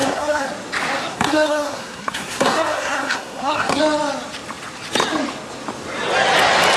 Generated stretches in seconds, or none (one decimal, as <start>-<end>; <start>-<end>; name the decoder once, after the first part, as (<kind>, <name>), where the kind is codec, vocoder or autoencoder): 0.0-0.5 (codec, SNAC); 1.1-3.8